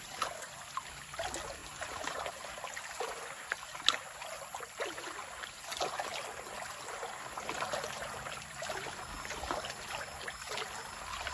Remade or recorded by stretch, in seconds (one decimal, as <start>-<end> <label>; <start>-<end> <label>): 0.0-11.3 recorded